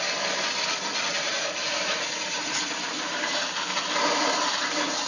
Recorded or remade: remade